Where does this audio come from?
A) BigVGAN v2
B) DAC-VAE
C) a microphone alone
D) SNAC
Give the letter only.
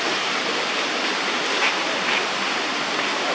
A